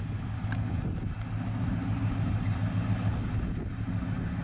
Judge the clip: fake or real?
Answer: real